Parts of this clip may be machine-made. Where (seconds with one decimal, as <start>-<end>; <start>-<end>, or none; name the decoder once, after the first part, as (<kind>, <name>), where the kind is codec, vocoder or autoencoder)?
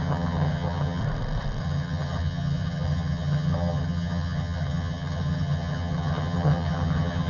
0.0-1.0 (vocoder, HiFi-GAN); 1.6-7.3